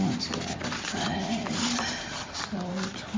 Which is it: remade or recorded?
remade